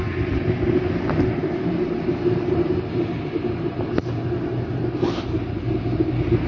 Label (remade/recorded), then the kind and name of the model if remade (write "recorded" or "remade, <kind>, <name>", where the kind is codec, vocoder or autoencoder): recorded